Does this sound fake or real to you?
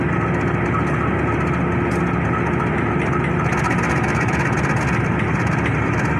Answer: real